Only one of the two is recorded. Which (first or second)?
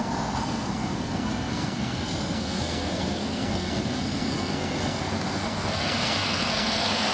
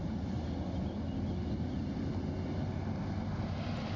second